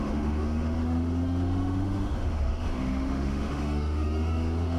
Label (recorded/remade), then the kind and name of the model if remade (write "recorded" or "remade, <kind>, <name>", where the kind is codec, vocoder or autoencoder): remade, autoencoder, DAC-VAE